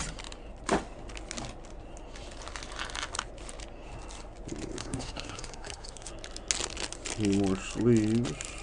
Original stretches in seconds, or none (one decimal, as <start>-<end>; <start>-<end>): 0.0-4.8; 6.1-8.6